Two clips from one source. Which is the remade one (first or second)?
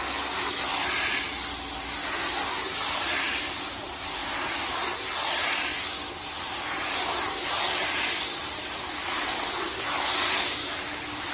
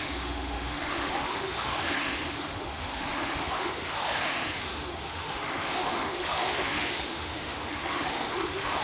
second